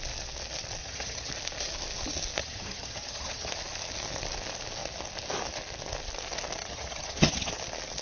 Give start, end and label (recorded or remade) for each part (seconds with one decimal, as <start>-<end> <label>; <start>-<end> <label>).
0.0-0.8 recorded; 0.8-1.3 remade; 1.3-2.4 recorded; 2.4-3.5 remade; 3.5-6.6 recorded; 6.6-7.5 remade; 7.5-8.0 recorded